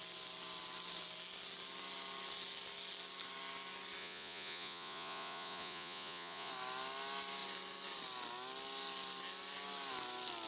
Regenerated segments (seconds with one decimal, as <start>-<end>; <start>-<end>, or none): 4.0-6.5